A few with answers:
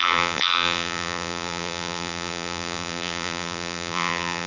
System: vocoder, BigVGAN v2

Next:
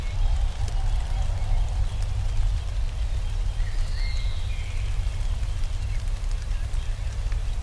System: none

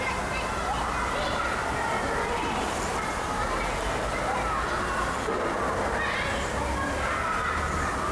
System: none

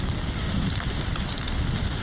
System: none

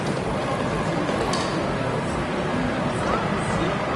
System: none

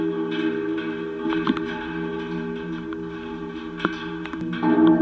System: none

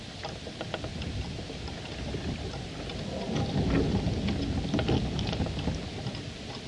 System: none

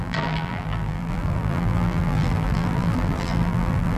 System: vocoder, BigVGAN v2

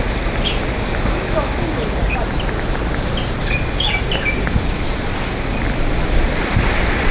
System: none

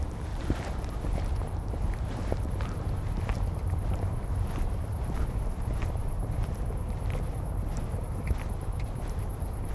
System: vocoder, BigVGAN v2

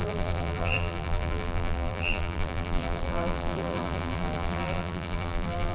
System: vocoder, BigVGAN v2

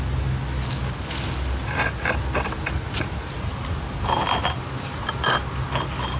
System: none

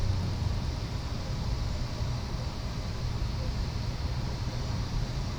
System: vocoder, BigVGAN v2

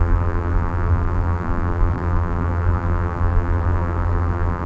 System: vocoder, BigVGAN v2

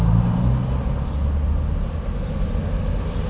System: none